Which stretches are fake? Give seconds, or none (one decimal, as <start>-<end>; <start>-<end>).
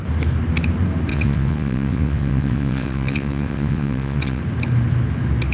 1.1-4.4